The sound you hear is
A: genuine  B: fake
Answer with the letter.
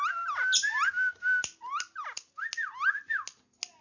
A